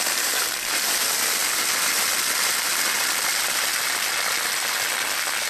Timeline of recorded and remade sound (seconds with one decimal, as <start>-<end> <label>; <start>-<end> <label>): 0.0-5.5 recorded